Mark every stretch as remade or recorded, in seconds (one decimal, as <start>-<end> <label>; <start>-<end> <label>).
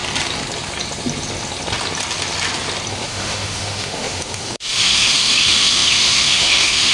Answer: 0.0-2.9 recorded; 2.9-6.9 remade